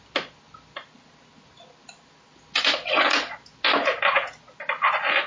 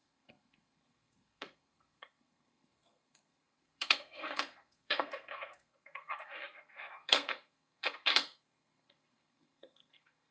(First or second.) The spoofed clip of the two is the second